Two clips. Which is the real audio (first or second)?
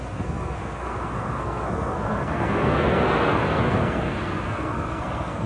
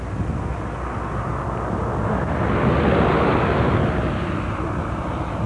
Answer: second